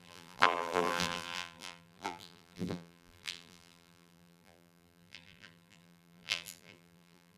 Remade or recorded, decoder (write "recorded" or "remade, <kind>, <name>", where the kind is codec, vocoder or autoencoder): remade, vocoder, BigVGAN v2